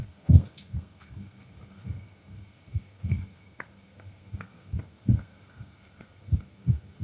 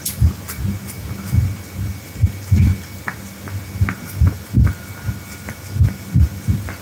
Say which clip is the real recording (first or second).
second